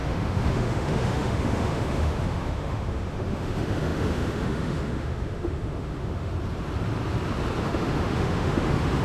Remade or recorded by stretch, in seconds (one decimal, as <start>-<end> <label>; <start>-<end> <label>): 0.0-6.3 remade; 6.3-7.6 recorded; 7.6-9.0 remade